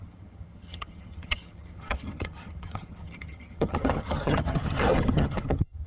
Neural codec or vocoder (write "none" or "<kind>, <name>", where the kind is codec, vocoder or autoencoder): vocoder, HiFi-GAN